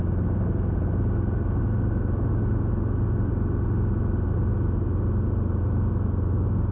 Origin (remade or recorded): recorded